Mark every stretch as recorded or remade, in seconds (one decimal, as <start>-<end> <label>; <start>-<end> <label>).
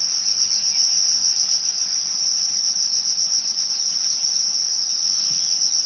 0.0-1.2 recorded; 1.2-4.7 remade; 4.7-5.9 recorded